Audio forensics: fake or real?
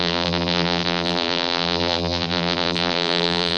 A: fake